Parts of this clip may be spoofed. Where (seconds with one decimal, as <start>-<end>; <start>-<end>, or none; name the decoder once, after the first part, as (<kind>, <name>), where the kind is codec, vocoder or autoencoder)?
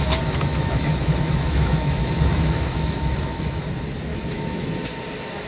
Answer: 0.5-3.6 (autoencoder, DAC-VAE); 4.1-4.7